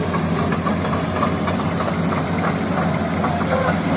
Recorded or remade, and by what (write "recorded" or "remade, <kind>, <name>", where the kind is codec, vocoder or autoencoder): recorded